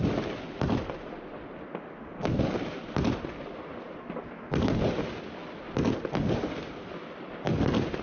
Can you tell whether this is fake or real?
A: real